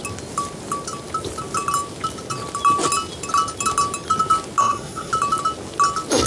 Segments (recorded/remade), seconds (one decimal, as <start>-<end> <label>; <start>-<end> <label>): 0.0-4.6 recorded; 4.6-5.1 remade; 5.1-6.3 recorded